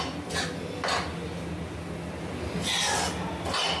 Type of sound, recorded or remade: recorded